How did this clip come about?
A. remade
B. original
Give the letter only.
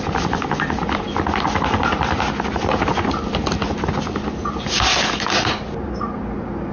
B